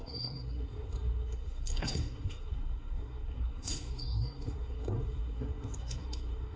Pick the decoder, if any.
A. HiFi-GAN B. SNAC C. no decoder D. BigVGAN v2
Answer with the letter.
B